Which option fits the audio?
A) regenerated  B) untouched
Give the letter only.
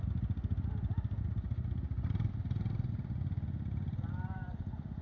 B